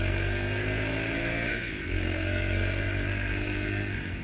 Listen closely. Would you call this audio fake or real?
fake